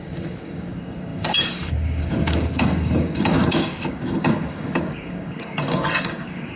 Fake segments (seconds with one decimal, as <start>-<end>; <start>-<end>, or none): 0.0-6.6